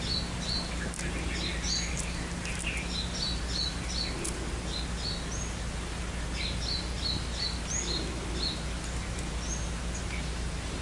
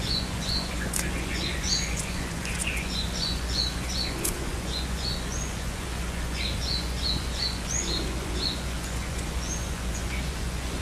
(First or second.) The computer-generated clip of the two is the second